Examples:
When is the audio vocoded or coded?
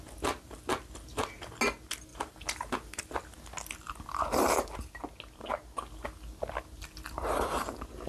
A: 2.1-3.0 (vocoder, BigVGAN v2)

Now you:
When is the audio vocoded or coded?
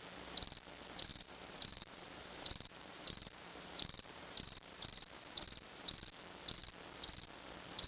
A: 1.1-5.8 (vocoder, BigVGAN v2)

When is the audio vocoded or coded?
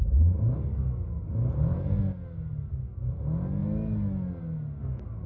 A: none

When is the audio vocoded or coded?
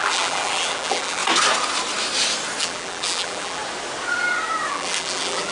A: 0.0-1.2 (vocoder, BigVGAN v2); 2.6-3.6; 4.7-5.5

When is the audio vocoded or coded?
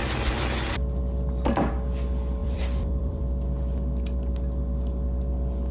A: 2.4-3.2 (vocoder, BigVGAN v2)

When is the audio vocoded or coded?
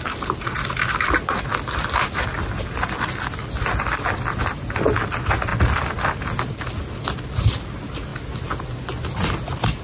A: none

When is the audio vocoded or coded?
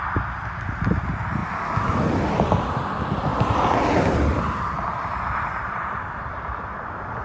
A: 3.3-4.4 (vocoder, BigVGAN v2)